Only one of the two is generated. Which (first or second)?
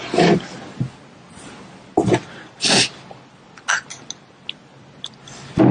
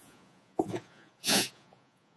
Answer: second